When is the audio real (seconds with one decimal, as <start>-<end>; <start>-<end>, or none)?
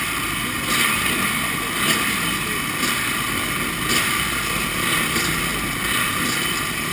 0.0-6.9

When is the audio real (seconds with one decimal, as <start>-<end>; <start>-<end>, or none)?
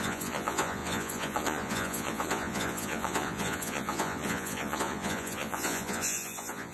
none